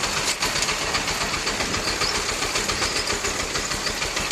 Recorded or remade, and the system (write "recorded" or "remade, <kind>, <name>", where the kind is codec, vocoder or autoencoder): recorded